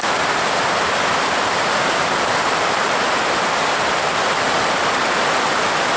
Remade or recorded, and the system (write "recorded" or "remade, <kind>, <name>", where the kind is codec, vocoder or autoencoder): recorded